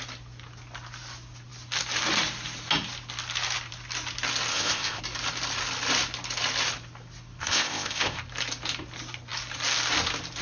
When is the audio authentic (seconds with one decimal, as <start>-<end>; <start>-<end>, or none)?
0.0-4.5; 5.0-7.4; 8.2-10.4